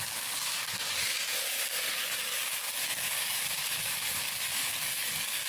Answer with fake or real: fake